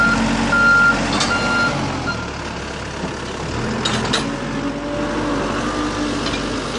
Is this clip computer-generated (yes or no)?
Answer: no